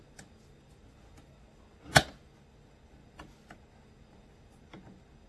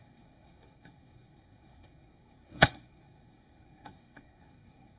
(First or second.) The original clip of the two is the first